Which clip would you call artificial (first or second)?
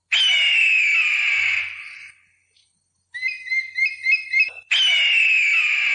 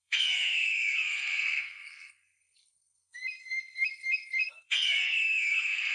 second